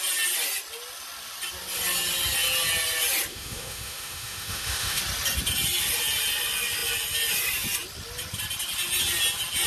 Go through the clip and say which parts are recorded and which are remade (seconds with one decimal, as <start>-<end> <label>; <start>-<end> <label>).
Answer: 0.0-3.3 recorded; 3.3-5.0 remade; 5.0-9.7 recorded